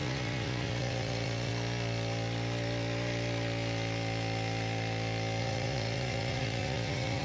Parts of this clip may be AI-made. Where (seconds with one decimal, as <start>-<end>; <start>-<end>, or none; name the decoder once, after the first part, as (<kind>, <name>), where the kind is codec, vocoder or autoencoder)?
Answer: 0.0-1.5 (vocoder, Vocos); 5.4-7.2